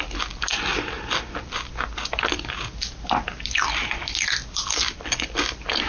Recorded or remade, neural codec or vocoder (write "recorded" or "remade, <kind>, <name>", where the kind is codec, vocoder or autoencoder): recorded